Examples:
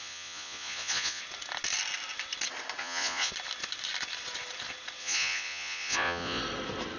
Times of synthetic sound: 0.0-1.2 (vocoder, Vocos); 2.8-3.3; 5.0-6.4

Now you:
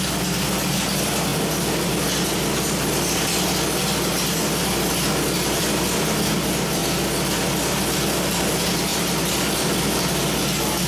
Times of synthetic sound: none

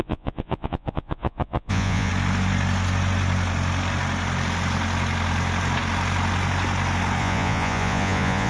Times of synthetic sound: 0.0-2.1 (vocoder, Vocos); 7.2-8.5